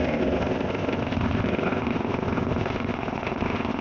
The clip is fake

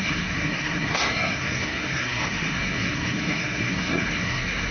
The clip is fake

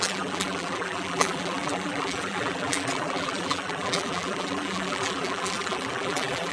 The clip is fake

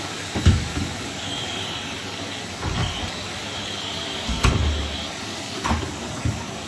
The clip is fake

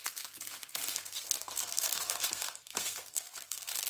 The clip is fake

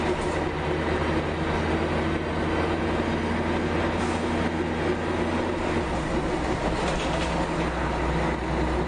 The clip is real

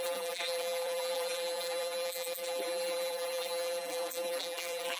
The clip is fake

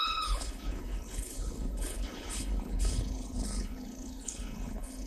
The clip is fake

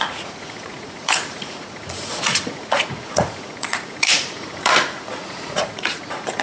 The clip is fake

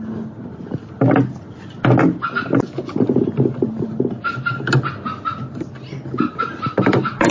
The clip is real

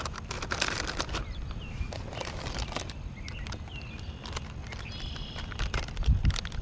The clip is real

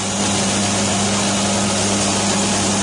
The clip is real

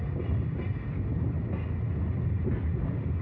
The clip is real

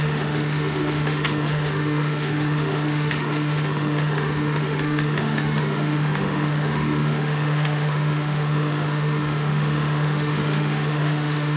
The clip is fake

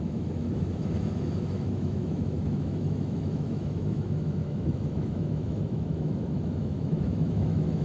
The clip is fake